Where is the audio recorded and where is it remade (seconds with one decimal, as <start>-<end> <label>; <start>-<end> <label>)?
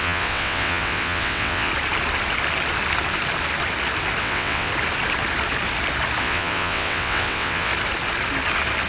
0.0-1.7 remade; 1.7-4.2 recorded; 4.2-4.7 remade; 4.7-6.2 recorded; 6.2-7.7 remade; 7.7-8.9 recorded